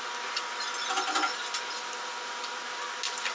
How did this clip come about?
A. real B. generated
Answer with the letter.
A